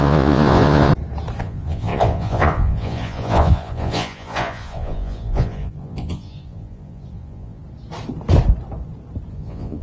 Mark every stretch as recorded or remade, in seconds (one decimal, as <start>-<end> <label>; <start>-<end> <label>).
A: 0.0-0.9 remade; 0.9-1.4 recorded; 1.4-7.6 remade; 7.6-9.3 recorded; 9.3-9.8 remade